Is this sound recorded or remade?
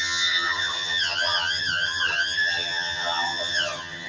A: remade